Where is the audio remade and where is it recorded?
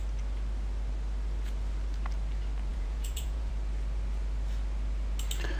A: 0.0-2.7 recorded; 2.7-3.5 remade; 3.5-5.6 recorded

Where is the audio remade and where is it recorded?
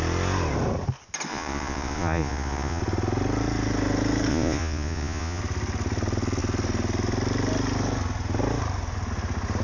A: 0.0-1.3 recorded; 1.3-2.8 remade; 2.8-4.3 recorded; 4.3-5.4 remade; 5.4-9.6 recorded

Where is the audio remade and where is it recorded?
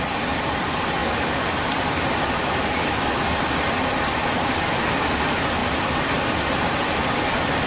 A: 0.0-7.7 recorded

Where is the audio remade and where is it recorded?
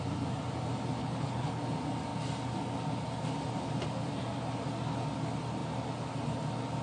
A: 0.0-1.0 recorded; 1.0-1.6 remade; 1.6-6.8 recorded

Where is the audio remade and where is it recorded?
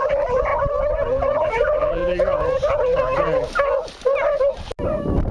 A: 0.0-0.5 remade; 0.5-1.3 recorded; 1.3-2.0 remade; 2.0-5.3 recorded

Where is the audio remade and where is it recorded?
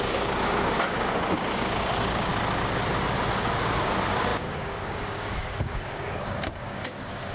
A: 0.0-2.3 remade; 2.3-3.6 recorded; 3.6-7.3 remade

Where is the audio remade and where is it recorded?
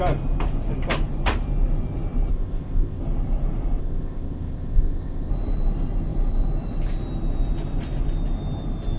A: 0.0-2.3 recorded; 2.3-3.0 remade; 3.0-3.8 recorded; 3.8-5.3 remade; 5.3-9.0 recorded